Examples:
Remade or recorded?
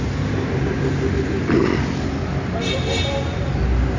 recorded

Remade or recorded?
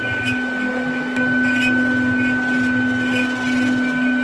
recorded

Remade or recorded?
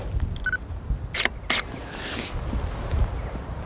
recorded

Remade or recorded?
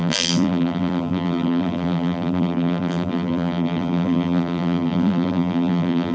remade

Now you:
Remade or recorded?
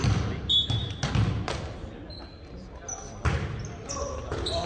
recorded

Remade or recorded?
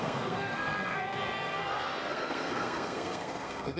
remade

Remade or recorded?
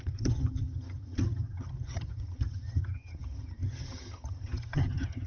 remade